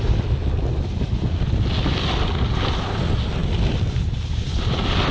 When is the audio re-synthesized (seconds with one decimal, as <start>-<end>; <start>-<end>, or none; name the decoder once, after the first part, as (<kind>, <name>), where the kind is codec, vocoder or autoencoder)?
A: none

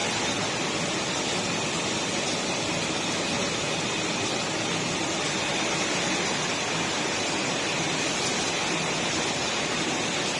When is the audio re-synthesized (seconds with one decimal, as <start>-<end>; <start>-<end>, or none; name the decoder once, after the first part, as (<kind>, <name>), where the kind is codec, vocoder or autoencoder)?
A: none

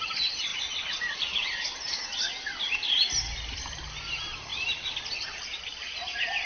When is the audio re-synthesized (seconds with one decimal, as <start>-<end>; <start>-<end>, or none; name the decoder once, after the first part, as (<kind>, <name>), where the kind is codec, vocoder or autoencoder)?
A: 0.5-3.9 (vocoder, BigVGAN v2); 4.5-5.4

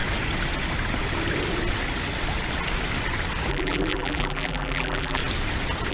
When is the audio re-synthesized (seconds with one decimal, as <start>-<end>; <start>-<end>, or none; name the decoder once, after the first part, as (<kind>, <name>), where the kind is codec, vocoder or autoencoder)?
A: 3.5-5.2 (vocoder, BigVGAN v2)

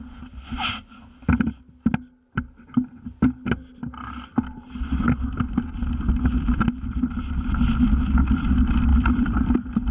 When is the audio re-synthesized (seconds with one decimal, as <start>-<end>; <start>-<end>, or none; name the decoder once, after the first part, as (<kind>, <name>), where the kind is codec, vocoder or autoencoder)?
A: 8.9-9.9 (vocoder, BigVGAN v2)